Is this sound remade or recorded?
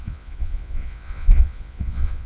remade